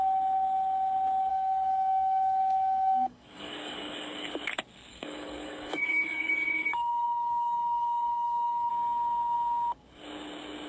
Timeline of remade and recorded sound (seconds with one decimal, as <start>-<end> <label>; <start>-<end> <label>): 0.0-1.3 recorded; 1.3-4.3 remade; 4.3-4.9 recorded; 4.9-8.7 remade; 8.7-10.7 recorded